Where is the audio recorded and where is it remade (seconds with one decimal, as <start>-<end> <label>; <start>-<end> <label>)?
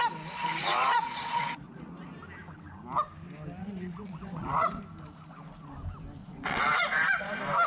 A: 0.0-0.6 recorded; 0.6-2.1 remade; 2.1-3.6 recorded; 3.6-4.8 remade; 4.8-6.2 recorded; 6.2-7.3 remade; 7.3-7.7 recorded